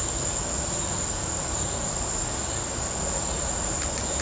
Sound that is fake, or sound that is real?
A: real